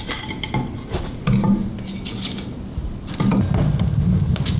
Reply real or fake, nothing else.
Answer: real